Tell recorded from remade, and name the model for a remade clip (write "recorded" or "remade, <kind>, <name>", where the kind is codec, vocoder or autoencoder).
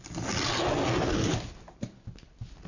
recorded